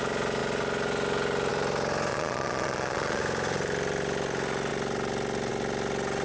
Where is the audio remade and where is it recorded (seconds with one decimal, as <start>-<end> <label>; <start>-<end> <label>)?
0.0-2.1 recorded; 2.1-3.2 remade; 3.2-6.2 recorded